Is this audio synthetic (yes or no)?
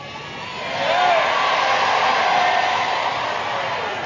no